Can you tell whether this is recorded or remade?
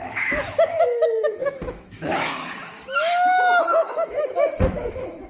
remade